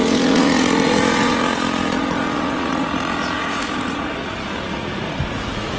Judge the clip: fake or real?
fake